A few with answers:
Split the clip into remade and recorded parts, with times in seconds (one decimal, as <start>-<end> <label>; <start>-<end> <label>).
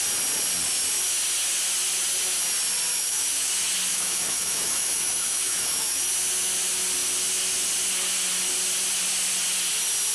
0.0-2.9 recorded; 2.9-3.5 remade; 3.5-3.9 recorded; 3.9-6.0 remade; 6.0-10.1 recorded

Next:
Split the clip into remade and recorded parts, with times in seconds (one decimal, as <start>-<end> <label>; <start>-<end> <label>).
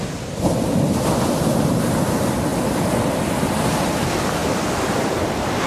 0.0-5.7 recorded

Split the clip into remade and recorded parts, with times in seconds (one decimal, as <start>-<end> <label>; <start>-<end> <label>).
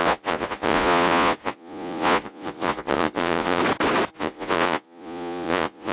0.0-3.6 remade; 3.6-4.2 recorded; 4.2-5.9 remade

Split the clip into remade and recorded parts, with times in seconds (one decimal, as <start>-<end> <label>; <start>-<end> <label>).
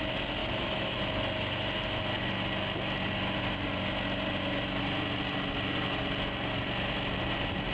0.0-0.4 recorded; 0.4-1.0 remade; 1.0-7.7 recorded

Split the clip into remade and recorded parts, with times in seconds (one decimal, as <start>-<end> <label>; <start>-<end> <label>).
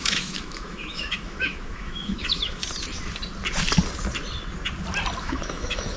0.0-2.6 remade; 2.6-5.2 recorded; 5.2-6.0 remade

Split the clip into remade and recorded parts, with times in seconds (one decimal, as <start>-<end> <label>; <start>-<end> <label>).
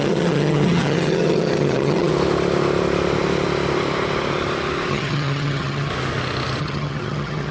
0.0-2.1 remade; 2.1-4.9 recorded; 4.9-5.9 remade; 5.9-6.6 recorded; 6.6-7.5 remade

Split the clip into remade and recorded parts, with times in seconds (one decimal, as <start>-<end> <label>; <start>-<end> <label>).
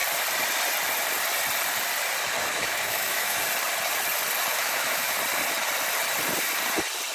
0.0-2.5 recorded; 2.5-3.4 remade; 3.4-4.5 recorded; 4.5-5.2 remade; 5.2-7.1 recorded